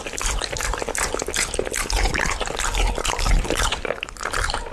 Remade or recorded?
recorded